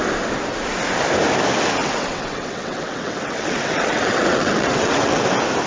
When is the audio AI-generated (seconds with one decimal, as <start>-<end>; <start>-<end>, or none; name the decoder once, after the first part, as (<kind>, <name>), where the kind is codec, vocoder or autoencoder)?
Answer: 1.8-5.2 (vocoder, WaveNeXt)

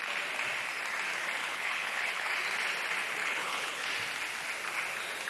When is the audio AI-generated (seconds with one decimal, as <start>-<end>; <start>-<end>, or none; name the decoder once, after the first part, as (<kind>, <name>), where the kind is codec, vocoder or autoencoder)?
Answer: 1.4-2.3 (codec, HILCodec); 3.2-3.9

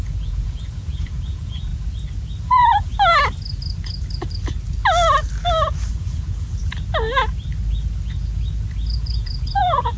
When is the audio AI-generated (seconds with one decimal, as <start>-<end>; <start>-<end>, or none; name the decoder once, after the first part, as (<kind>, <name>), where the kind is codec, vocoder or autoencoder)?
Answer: 0.0-1.7 (vocoder, Vocos); 2.4-2.9; 5.9-6.6; 8.9-10.0

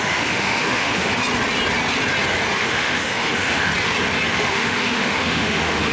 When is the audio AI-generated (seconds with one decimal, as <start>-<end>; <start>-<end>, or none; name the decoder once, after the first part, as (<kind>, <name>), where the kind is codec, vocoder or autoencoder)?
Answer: 0.0-1.1 (autoencoder, DAC-VAE); 2.6-3.7; 4.3-5.9

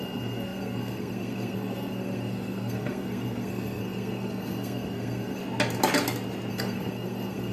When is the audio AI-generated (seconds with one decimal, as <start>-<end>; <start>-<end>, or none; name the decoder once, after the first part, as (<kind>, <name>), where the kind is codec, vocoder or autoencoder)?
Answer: 0.0-5.4 (codec, SNAC); 6.5-7.5

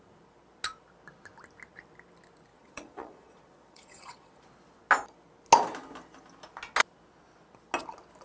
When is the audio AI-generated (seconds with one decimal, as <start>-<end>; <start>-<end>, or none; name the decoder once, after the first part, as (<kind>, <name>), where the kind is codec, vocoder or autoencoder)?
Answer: 2.5-4.4 (vocoder, Vocos)

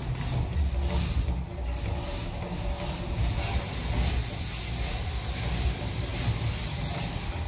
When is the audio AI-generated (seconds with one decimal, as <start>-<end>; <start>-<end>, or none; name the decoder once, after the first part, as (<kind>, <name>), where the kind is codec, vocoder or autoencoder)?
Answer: none

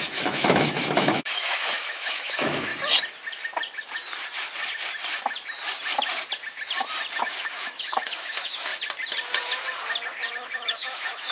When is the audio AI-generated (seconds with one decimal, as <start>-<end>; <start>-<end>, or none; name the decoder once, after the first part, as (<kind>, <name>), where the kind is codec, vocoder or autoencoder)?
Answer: 0.0-2.7 (autoencoder, DAC-VAE); 7.2-8.7; 10.3-11.3